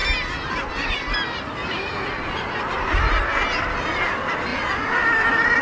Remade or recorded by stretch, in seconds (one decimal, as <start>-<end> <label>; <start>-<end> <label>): 0.0-5.6 recorded